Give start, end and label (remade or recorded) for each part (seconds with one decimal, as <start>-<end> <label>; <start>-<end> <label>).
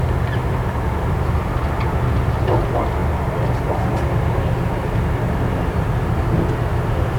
0.0-0.4 recorded; 0.4-1.4 remade; 1.4-7.2 recorded